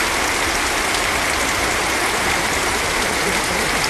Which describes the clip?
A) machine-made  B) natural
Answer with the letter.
B